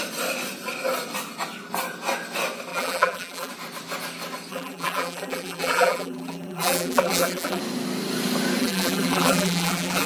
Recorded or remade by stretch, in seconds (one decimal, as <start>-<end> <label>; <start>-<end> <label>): 0.0-2.7 recorded; 2.7-3.5 remade; 3.5-4.5 recorded; 4.5-7.6 remade; 7.6-8.6 recorded; 8.6-10.1 remade